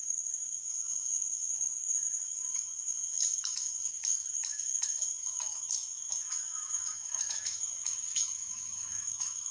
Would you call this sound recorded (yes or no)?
no